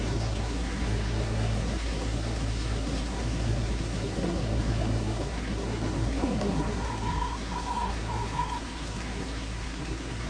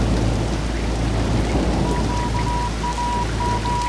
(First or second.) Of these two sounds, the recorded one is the second